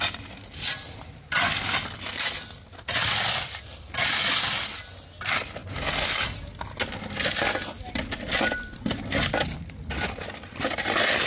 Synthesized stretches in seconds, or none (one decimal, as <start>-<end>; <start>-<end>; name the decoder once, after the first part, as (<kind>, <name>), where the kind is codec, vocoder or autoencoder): none